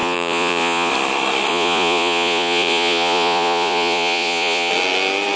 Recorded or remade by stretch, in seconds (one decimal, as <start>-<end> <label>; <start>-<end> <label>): 0.0-0.9 remade; 0.9-1.5 recorded; 1.5-4.7 remade; 4.7-5.4 recorded